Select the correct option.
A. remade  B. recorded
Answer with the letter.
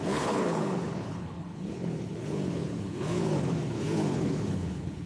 A